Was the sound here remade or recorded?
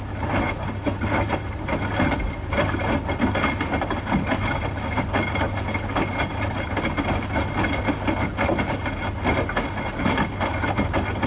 recorded